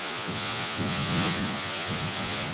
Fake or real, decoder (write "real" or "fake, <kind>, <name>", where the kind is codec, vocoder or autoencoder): fake, vocoder, Vocos